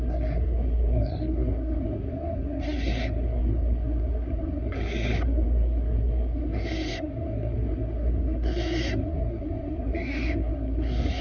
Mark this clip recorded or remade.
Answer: remade